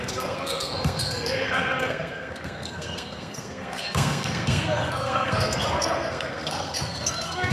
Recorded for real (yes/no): no